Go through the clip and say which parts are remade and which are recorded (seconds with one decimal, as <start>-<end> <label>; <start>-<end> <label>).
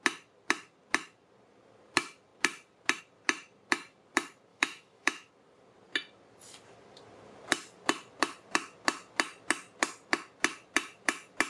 0.0-4.5 recorded; 4.5-5.3 remade; 5.3-11.5 recorded